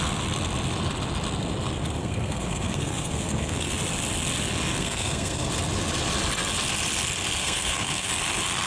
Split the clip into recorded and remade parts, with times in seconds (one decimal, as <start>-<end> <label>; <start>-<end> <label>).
0.0-2.0 recorded; 2.0-3.7 remade; 3.7-4.8 recorded; 4.8-5.5 remade; 5.5-7.4 recorded; 7.4-8.1 remade; 8.1-8.7 recorded